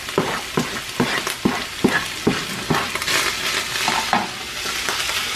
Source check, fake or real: real